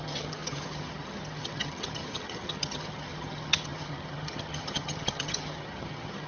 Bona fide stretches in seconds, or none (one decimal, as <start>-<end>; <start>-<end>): none